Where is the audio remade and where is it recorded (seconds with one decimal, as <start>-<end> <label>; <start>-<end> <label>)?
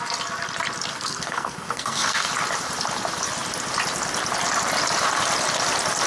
0.0-0.9 recorded; 0.9-2.3 remade; 2.3-6.1 recorded